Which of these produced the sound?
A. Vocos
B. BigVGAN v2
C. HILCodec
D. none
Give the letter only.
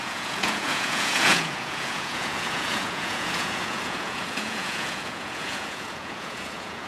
A